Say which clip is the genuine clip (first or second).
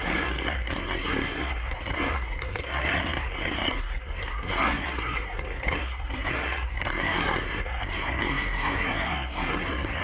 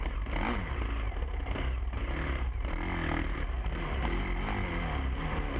second